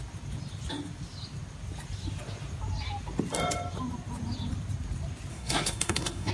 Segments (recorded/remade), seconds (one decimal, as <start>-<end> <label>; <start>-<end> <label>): 0.0-5.3 recorded; 5.3-6.3 remade